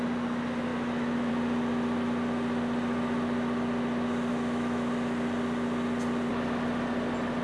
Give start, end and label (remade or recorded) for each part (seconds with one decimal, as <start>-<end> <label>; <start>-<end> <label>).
0.0-0.7 recorded; 0.7-1.3 remade; 1.3-4.3 recorded; 4.3-4.9 remade; 4.9-7.4 recorded